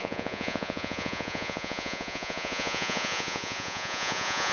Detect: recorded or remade remade